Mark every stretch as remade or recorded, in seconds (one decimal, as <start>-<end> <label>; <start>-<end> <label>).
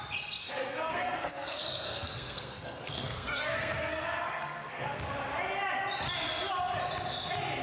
0.0-0.4 recorded; 0.4-5.0 remade; 5.0-7.6 recorded